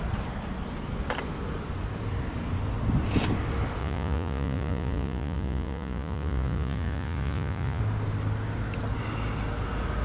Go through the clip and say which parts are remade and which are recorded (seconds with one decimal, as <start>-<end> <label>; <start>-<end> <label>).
0.0-3.8 recorded; 3.8-7.8 remade; 7.8-10.0 recorded